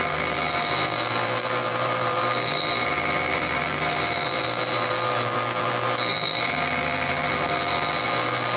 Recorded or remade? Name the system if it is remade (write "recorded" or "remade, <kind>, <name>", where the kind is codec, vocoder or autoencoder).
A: remade, vocoder, BigVGAN v2